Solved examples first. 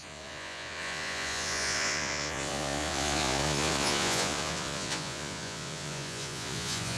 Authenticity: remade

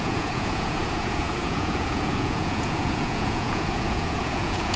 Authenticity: remade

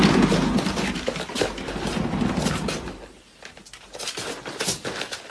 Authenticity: recorded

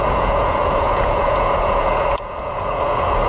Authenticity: remade